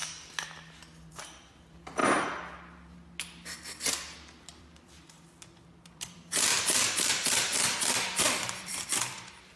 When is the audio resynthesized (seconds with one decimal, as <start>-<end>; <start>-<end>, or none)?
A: 1.1-2.0; 4.6-9.6